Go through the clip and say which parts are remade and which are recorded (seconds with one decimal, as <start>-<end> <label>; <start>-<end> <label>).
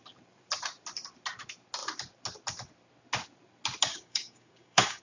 0.0-3.9 recorded; 3.9-5.0 remade